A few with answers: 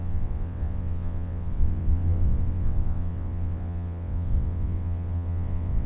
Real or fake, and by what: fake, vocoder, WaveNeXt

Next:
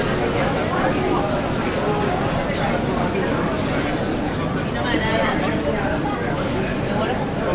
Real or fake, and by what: real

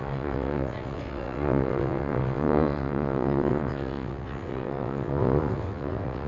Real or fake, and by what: fake, vocoder, WaveNeXt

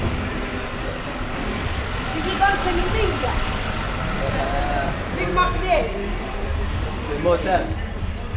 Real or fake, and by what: real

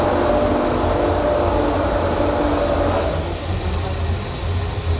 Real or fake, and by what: real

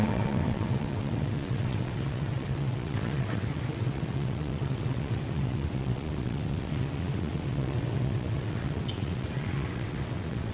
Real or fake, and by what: fake, vocoder, WaveNeXt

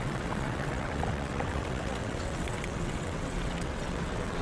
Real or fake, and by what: fake, vocoder, WaveNeXt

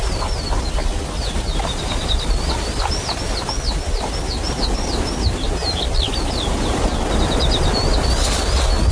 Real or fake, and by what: real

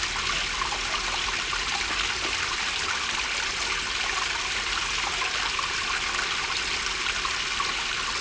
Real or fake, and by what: real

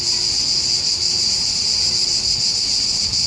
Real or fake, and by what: real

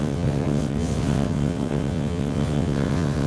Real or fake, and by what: fake, vocoder, WaveNeXt